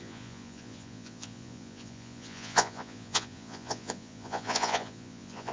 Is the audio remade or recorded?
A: remade